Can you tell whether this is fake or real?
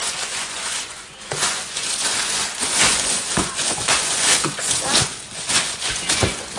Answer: fake